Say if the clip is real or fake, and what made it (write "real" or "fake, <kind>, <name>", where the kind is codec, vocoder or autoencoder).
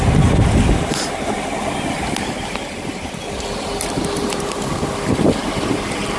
real